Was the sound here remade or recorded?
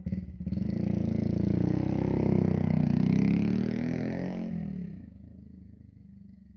remade